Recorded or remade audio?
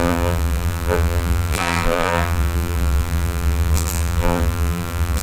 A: remade